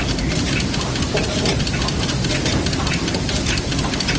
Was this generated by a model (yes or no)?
no